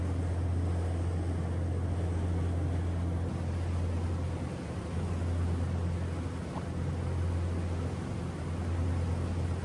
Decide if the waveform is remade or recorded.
recorded